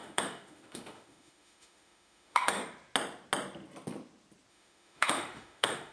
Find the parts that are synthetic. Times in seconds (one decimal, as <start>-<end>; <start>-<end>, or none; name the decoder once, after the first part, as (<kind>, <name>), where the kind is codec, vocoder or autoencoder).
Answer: 0.0-2.6 (autoencoder, DAC-VAE); 4.5-5.9